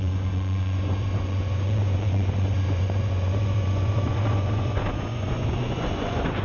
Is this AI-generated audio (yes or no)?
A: yes